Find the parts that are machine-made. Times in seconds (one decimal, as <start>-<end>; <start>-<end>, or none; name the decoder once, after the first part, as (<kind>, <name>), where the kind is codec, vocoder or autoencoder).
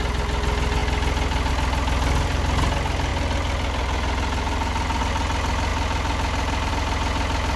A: none